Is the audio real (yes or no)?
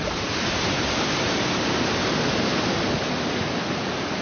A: yes